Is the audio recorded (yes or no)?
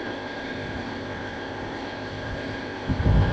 no